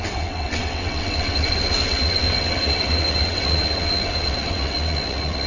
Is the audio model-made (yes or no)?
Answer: yes